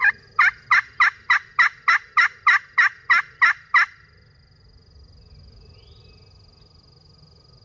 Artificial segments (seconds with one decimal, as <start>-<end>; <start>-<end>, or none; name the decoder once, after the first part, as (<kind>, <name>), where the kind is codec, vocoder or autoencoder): none